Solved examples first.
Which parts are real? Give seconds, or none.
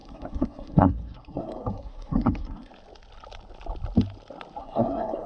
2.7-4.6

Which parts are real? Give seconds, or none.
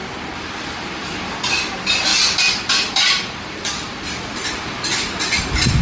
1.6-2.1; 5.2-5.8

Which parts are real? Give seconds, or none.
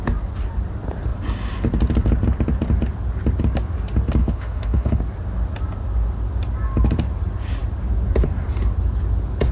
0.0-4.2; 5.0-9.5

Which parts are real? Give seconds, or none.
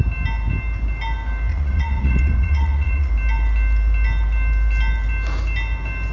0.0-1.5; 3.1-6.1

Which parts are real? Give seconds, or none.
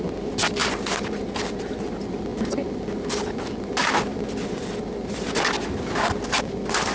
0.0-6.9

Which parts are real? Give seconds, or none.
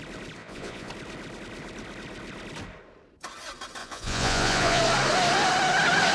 0.0-0.4; 0.9-3.8; 4.8-6.1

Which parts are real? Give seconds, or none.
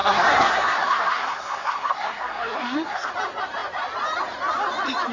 3.1-5.1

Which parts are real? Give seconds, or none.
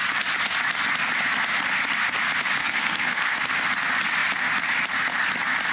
0.0-2.6; 3.4-5.7